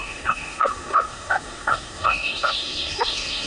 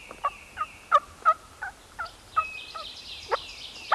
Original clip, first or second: second